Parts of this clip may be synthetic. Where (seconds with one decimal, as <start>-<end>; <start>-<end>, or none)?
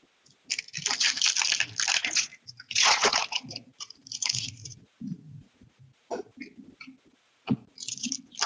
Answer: 2.0-6.4; 7.1-8.1